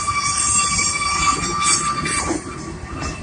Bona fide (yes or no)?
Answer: yes